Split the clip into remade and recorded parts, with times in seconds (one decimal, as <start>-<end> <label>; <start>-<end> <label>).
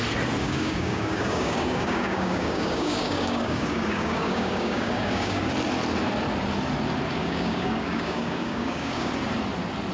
0.0-0.4 recorded; 0.4-5.5 remade; 5.5-7.2 recorded; 7.2-9.1 remade; 9.1-9.9 recorded